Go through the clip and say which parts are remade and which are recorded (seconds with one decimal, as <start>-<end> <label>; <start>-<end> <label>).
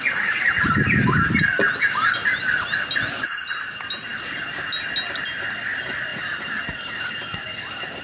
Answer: 0.0-8.0 recorded